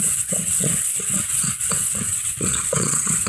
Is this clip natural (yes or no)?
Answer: no